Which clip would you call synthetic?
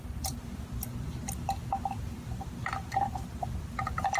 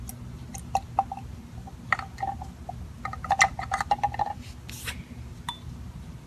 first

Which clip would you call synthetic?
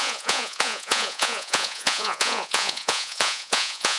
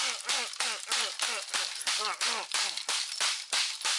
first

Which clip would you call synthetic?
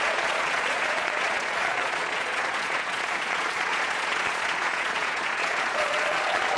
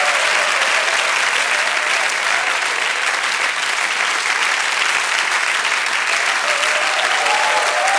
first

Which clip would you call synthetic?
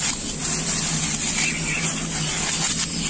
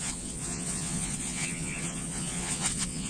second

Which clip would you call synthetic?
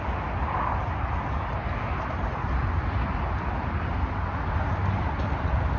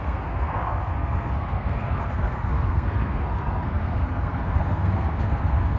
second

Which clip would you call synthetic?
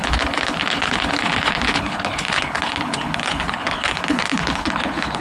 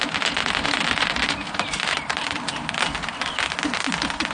first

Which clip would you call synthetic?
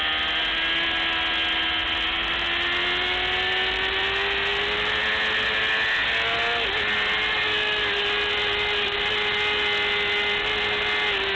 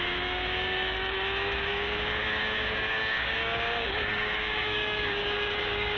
second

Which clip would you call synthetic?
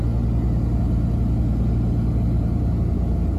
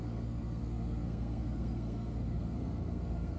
second